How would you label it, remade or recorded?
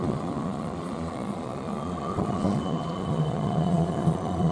remade